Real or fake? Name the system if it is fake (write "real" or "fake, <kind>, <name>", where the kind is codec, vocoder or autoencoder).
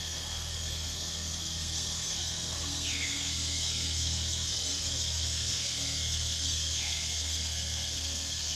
fake, codec, SNAC